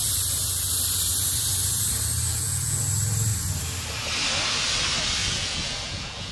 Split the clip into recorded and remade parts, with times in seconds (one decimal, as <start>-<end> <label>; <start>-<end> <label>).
0.0-2.3 recorded; 2.3-2.8 remade; 2.8-5.2 recorded; 5.2-6.3 remade